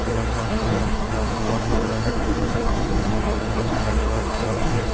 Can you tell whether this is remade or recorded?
remade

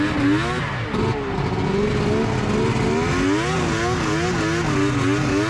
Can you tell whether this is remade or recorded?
recorded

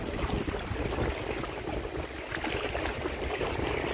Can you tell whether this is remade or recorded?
recorded